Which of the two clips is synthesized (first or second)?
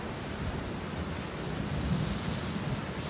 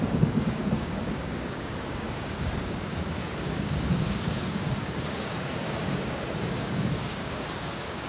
second